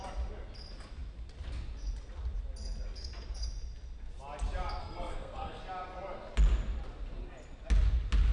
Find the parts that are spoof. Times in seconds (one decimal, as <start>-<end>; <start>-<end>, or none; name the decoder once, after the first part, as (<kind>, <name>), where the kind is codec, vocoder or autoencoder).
4.8-5.6 (codec, SNAC)